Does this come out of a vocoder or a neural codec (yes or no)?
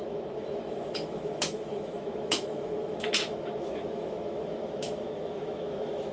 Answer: yes